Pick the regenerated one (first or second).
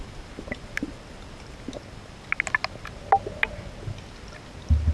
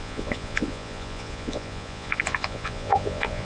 second